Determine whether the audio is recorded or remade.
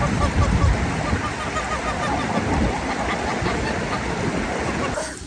recorded